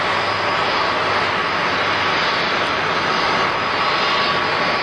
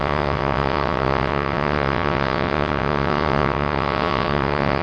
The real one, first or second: first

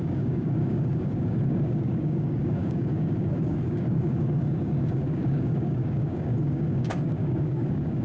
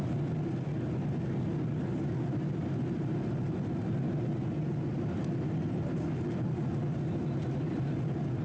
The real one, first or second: second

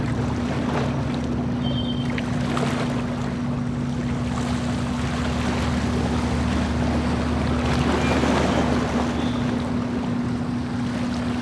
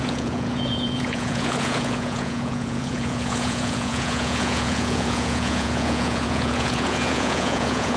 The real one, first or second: first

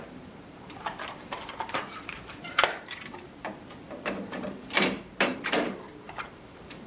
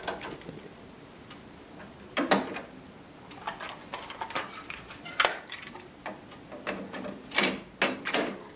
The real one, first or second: second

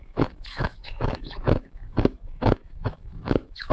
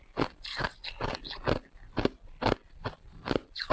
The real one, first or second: second